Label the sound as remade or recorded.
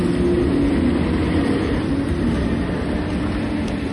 recorded